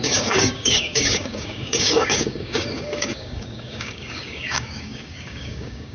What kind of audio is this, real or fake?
fake